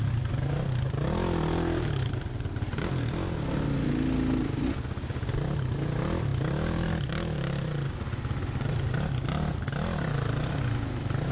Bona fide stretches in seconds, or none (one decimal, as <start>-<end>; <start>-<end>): 0.0-11.3